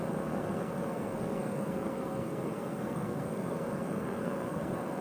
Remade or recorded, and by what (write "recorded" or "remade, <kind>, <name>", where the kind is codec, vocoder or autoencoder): remade, codec, SNAC